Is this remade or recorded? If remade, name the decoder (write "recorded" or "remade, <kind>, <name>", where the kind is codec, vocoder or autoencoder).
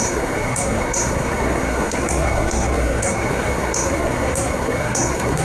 remade, codec, SNAC